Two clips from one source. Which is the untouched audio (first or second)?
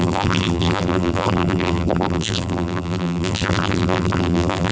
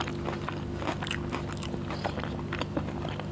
second